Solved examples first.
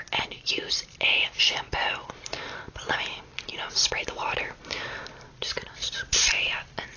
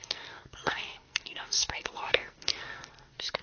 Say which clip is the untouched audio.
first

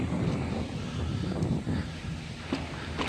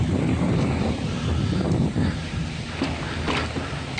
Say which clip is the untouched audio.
first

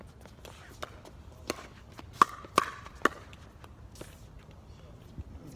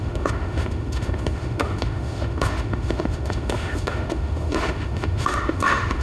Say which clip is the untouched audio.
first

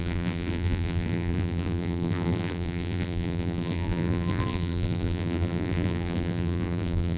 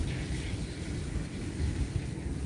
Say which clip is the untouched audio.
second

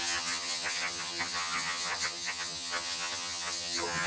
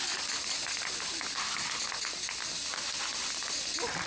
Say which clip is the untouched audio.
second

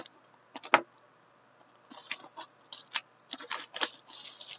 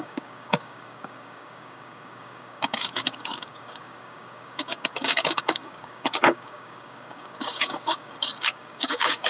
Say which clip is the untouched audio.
first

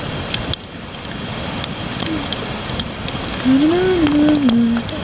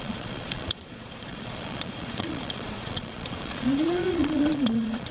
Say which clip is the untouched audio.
first